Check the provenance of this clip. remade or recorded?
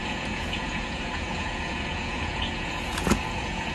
remade